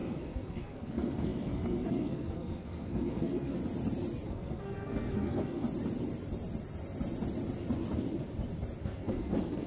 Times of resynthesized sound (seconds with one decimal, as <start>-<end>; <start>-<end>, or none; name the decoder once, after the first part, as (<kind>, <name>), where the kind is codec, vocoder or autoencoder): 0.0-3.6 (codec, SNAC); 4.3-5.6; 8.8-9.7